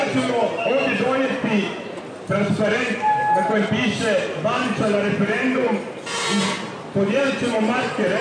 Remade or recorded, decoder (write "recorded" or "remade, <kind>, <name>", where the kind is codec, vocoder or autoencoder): recorded